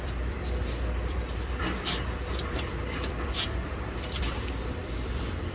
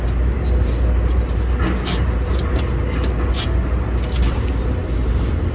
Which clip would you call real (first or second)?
second